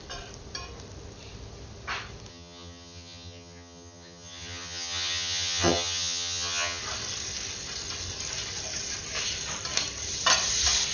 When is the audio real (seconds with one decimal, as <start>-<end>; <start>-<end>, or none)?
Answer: 0.0-2.3; 6.8-10.9